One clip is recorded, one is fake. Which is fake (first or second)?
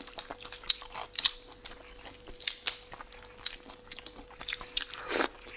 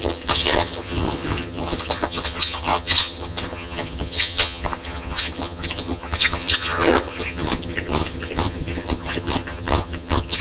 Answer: second